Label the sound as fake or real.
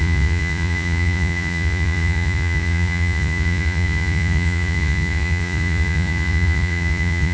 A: fake